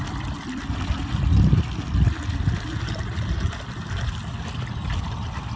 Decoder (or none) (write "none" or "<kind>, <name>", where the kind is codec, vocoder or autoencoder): none